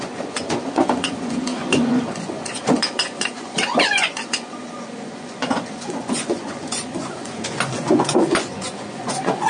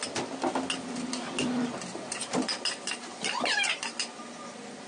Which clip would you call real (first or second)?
second